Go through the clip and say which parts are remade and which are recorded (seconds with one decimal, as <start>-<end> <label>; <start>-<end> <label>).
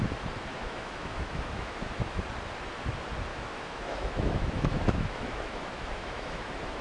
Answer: 0.0-0.5 recorded; 0.5-2.2 remade; 2.2-3.3 recorded; 3.3-6.8 remade